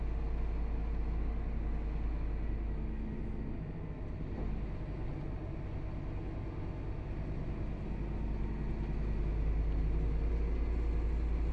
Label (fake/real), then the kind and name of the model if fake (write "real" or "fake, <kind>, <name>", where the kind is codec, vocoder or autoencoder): real